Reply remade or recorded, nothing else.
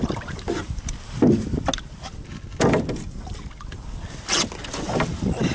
recorded